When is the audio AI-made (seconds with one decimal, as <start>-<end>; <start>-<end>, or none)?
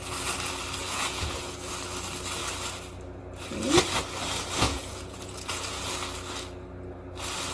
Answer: 0.8-1.7; 4.7-5.9